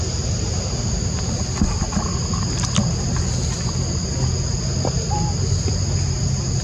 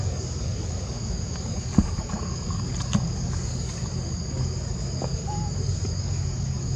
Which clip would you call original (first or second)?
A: first